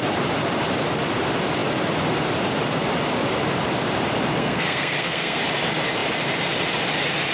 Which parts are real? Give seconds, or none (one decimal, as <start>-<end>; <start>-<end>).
0.0-4.4; 5.4-7.3